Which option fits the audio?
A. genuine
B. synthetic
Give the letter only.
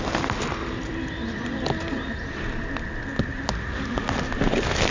A